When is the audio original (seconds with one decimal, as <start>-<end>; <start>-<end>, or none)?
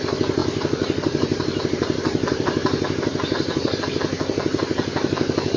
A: 0.0-0.4; 3.8-5.6